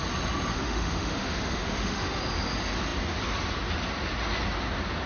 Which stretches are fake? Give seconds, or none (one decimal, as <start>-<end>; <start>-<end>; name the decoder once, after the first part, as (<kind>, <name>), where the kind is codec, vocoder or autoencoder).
0.5-2.2 (autoencoder, DAC-VAE)